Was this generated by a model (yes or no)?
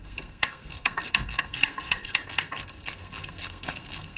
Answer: yes